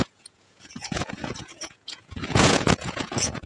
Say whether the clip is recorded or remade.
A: remade